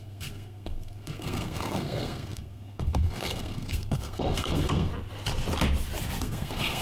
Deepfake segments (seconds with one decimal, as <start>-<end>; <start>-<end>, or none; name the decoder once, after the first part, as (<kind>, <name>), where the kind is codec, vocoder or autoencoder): 0.0-4.9 (codec, SNAC); 6.2-6.8